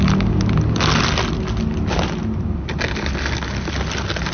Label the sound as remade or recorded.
recorded